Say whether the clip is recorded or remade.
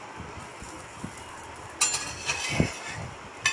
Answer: recorded